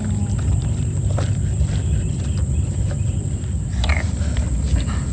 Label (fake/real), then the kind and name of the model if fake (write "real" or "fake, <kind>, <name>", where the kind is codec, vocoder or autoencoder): real